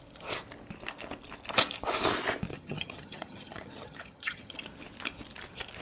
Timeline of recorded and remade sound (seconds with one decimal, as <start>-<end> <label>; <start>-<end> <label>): 0.0-2.5 recorded; 2.5-4.6 remade; 4.6-5.8 recorded